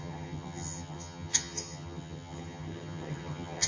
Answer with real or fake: fake